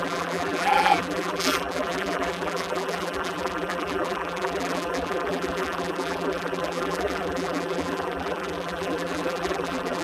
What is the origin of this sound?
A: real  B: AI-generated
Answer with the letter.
B